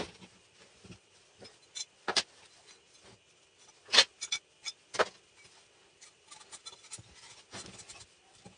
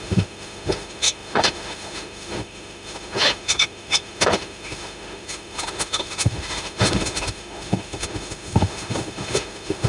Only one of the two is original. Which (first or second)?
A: first